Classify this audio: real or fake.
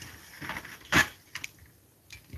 real